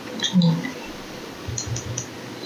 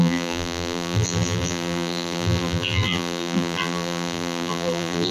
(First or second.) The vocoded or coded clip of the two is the second